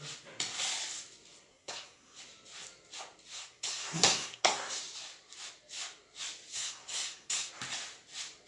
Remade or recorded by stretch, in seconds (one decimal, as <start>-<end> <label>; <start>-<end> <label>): 0.0-1.5 recorded; 1.5-2.2 remade; 2.2-3.3 recorded; 3.3-4.8 remade; 4.8-6.5 recorded; 6.5-7.5 remade; 7.5-8.5 recorded